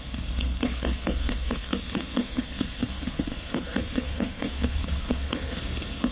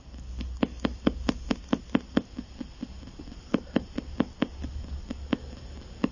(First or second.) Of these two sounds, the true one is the second